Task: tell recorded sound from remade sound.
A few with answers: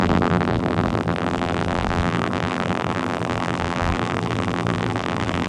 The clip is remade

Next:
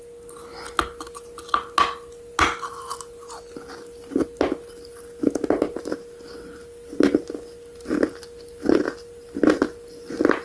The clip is recorded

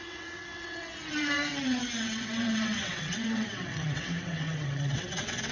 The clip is remade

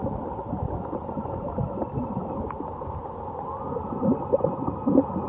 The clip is recorded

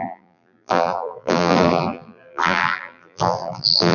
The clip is remade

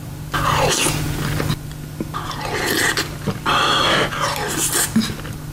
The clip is recorded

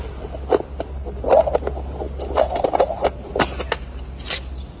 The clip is recorded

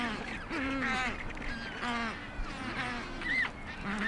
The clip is recorded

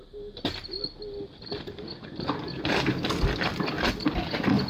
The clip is recorded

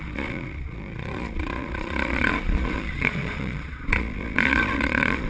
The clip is remade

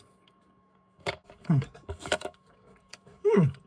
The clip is remade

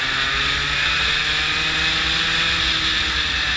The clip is recorded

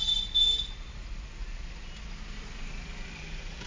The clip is recorded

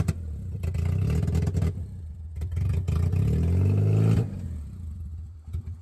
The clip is recorded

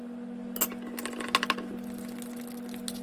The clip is recorded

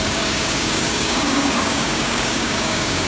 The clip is remade